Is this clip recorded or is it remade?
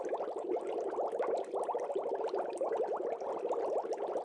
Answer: recorded